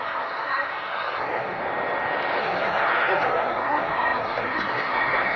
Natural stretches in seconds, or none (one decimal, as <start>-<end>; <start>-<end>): 1.6-2.4